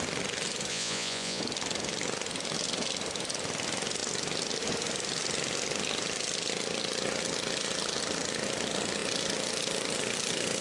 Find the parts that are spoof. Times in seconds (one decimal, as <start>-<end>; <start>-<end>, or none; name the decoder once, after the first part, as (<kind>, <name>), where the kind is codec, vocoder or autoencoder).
0.7-1.4 (vocoder, Vocos)